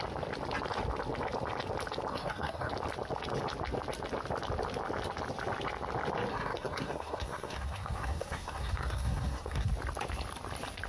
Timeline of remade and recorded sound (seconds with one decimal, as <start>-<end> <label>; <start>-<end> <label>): 0.0-2.1 recorded; 2.1-2.7 remade; 2.7-6.3 recorded; 6.3-9.7 remade; 9.7-10.9 recorded